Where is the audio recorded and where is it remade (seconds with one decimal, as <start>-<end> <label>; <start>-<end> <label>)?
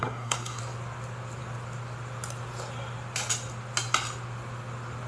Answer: 0.0-0.6 remade; 0.6-5.1 recorded